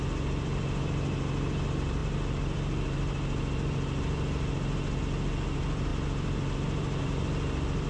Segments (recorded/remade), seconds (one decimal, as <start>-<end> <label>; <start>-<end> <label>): 0.0-7.9 recorded